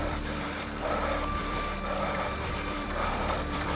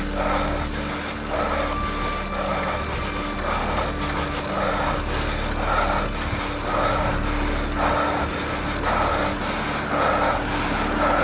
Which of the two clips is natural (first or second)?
second